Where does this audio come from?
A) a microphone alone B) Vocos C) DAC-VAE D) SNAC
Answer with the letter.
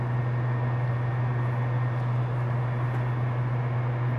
A